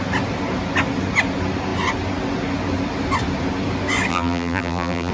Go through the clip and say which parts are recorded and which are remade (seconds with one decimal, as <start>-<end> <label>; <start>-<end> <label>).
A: 0.0-4.1 recorded; 4.1-5.1 remade